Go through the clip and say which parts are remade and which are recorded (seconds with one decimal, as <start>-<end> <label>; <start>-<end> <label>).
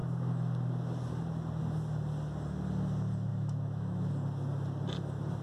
0.0-3.3 recorded; 3.3-4.1 remade; 4.1-5.4 recorded